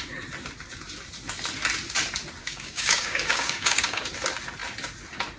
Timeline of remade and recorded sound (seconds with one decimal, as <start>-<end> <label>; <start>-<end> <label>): 0.0-2.4 recorded; 2.4-4.1 remade; 4.1-5.4 recorded